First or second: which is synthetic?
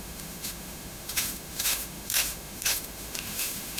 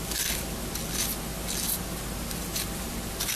first